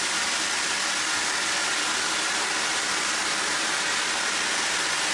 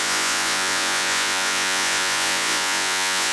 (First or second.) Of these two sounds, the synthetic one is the second